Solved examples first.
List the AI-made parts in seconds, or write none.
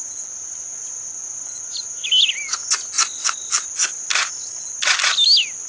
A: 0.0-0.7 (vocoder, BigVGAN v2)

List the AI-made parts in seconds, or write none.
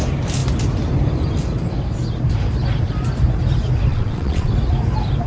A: 3.9-4.5 (vocoder, WaveNeXt)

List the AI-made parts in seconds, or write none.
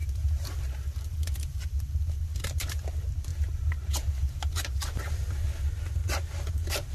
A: 0.0-1.6 (vocoder, BigVGAN v2); 3.3-5.0; 6.0-6.5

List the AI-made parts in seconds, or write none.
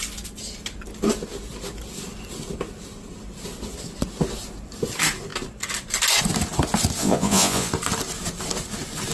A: 7.0-7.7 (vocoder, Vocos)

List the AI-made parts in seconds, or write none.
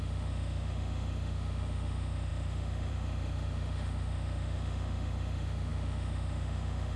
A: 0.0-7.0 (autoencoder, DAC-VAE)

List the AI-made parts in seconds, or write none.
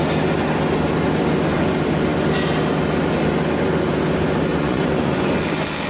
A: 4.5-5.3 (vocoder, Vocos)